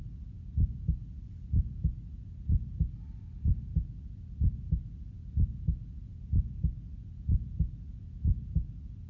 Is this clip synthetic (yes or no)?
no